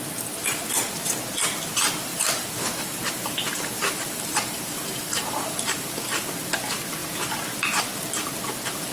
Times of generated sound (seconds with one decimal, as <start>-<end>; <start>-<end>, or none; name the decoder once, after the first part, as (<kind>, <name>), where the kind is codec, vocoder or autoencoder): 2.1-6.3 (vocoder, BigVGAN v2)